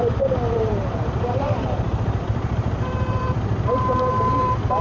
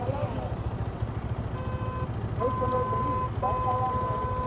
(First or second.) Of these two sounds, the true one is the second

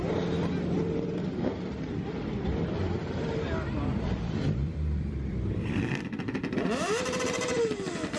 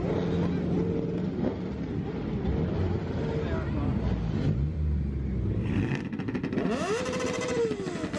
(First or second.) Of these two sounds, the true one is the second